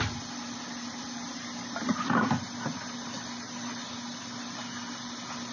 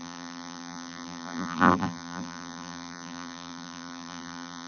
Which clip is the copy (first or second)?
second